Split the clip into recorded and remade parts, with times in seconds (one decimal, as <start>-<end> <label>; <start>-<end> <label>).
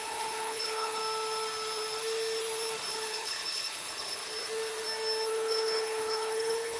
0.0-1.0 remade; 1.0-2.9 recorded; 2.9-4.2 remade; 4.2-5.3 recorded; 5.3-6.8 remade